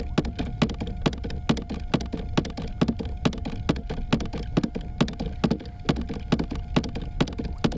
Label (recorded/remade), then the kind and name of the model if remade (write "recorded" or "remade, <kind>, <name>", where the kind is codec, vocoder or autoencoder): recorded